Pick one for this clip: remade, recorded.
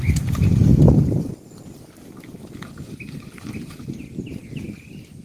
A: recorded